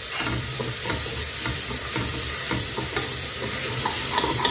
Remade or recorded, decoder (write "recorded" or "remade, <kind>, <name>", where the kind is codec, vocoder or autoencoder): remade, vocoder, BigVGAN v2